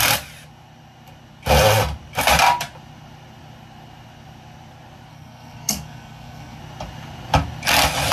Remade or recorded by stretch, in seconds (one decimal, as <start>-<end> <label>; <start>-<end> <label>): 0.0-5.1 recorded; 5.1-6.6 remade; 6.6-8.1 recorded